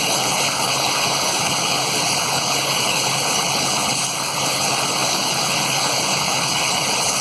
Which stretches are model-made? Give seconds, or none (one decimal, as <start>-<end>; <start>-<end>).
0.0-7.2